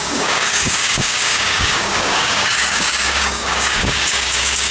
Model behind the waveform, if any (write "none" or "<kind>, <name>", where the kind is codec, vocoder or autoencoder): codec, DAC